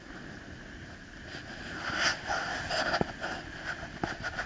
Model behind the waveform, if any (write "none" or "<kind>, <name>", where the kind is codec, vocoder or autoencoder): none